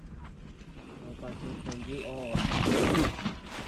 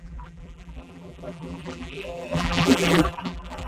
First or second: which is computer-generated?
second